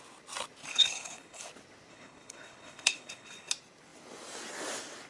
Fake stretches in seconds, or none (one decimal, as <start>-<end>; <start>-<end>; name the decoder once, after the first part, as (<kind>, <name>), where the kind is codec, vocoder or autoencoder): 0.7-1.4 (codec, HILCodec); 1.9-3.5